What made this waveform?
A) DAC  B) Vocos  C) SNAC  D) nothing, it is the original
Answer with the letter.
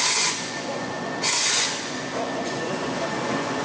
B